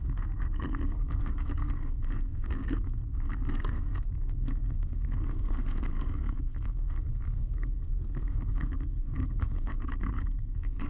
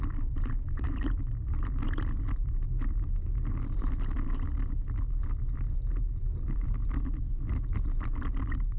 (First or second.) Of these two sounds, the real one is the second